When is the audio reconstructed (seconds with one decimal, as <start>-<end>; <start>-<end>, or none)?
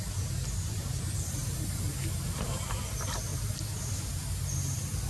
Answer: none